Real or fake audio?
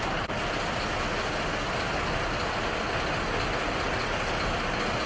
real